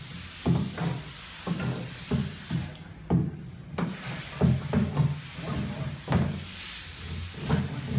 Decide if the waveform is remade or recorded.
recorded